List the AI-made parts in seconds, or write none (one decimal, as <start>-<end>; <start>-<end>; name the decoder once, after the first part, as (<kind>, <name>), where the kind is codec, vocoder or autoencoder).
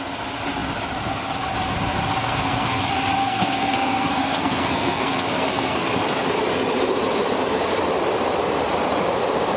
2.2-2.8 (codec, SNAC); 3.2-5.9